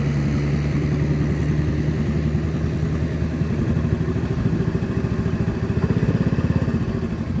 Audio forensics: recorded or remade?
recorded